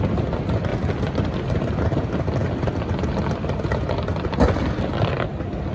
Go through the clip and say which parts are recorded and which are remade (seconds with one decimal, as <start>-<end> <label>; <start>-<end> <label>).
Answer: 0.0-0.7 recorded; 0.7-2.0 remade; 2.0-2.4 recorded; 2.4-3.0 remade; 3.0-4.1 recorded; 4.1-5.1 remade; 5.1-5.7 recorded

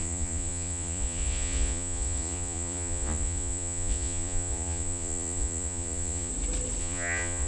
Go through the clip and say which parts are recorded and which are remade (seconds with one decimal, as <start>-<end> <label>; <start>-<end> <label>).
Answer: 0.0-6.3 remade; 6.3-6.8 recorded; 6.8-7.5 remade

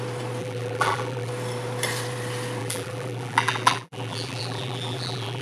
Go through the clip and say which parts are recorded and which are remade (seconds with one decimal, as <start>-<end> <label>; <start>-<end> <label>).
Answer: 0.0-0.4 recorded; 0.4-1.3 remade; 1.3-2.6 recorded; 2.6-5.4 remade

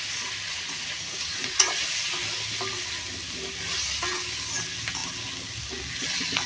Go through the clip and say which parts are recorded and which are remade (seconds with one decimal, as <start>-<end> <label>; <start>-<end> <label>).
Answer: 0.0-0.5 recorded; 0.5-1.7 remade; 1.7-6.5 recorded